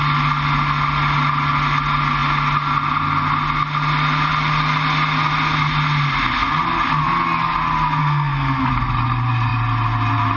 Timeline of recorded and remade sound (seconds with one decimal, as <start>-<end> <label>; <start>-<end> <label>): 0.0-8.0 recorded; 8.0-8.7 remade; 8.7-10.4 recorded